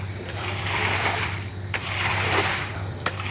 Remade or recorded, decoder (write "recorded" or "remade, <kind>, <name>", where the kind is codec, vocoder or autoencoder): remade, vocoder, BigVGAN v2